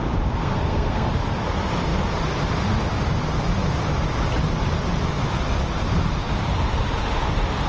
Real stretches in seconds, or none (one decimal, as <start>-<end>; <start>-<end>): 0.0-0.4; 1.1-7.7